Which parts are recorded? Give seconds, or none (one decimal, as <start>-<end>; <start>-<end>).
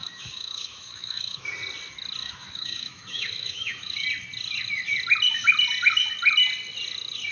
1.4-2.2; 3.9-7.3